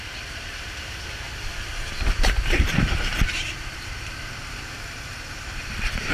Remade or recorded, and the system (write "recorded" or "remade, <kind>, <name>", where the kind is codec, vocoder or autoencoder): remade, vocoder, BigVGAN v2